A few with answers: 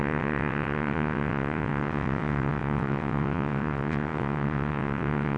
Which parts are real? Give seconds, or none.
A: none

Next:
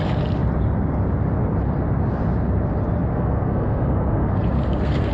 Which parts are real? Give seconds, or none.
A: 0.0-3.1

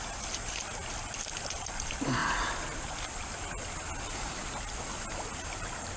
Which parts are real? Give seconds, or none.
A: 0.0-6.0

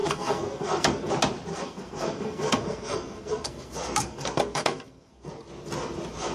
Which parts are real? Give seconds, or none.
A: 1.1-1.5; 5.3-6.3

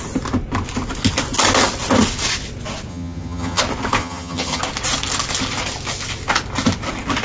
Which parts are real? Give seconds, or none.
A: 0.0-2.9; 3.6-4.0; 4.6-7.2

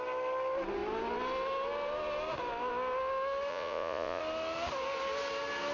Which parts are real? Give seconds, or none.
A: 0.0-3.5; 4.2-5.7

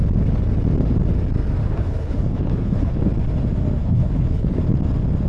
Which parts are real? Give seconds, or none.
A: 0.0-1.6; 3.0-3.8; 4.6-5.3

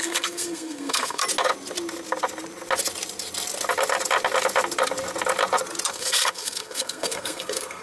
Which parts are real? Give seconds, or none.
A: 1.2-5.9